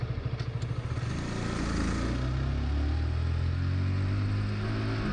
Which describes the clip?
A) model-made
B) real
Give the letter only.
B